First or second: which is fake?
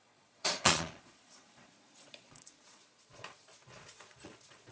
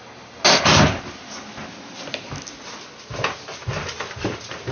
first